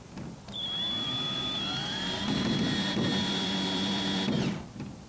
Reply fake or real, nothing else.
fake